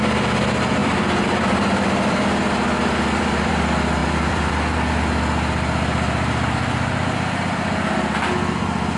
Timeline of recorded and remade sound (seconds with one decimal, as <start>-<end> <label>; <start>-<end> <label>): 0.0-0.8 recorded; 0.8-3.5 remade; 3.5-4.0 recorded; 4.0-4.5 remade; 4.5-9.0 recorded

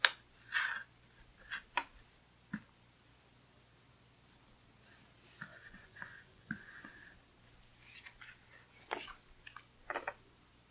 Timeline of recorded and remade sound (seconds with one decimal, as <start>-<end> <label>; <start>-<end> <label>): 0.0-5.5 recorded; 5.5-6.9 remade; 6.9-10.7 recorded

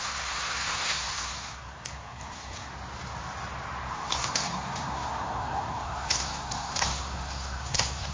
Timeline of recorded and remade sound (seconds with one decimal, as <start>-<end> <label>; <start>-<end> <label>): 0.0-2.7 remade; 2.7-3.9 recorded; 3.9-8.1 remade

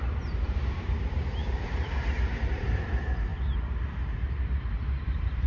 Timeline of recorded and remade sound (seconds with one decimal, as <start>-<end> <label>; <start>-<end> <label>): 0.0-3.3 remade; 3.3-3.9 recorded; 3.9-5.5 remade

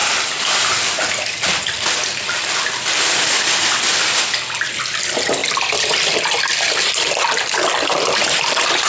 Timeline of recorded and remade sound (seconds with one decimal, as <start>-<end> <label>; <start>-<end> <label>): 0.0-5.4 recorded; 5.4-8.9 remade

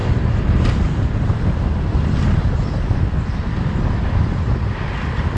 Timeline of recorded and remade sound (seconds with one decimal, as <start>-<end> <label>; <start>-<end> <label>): 0.0-5.4 recorded

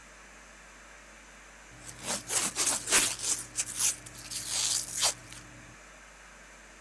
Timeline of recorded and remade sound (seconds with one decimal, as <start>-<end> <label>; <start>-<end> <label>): 0.0-6.8 recorded

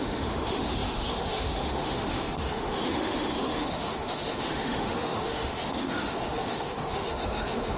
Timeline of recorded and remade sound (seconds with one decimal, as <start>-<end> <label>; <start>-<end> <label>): 0.0-7.8 remade